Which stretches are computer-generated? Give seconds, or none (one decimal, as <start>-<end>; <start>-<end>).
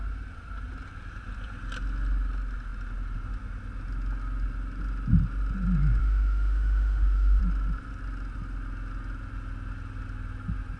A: 6.0-7.4